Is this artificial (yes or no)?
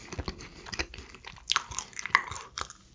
no